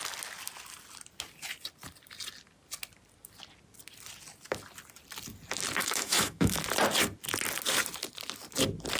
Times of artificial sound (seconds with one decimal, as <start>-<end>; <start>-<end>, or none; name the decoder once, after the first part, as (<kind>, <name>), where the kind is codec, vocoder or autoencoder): 5.8-6.6 (autoencoder, DAC-VAE)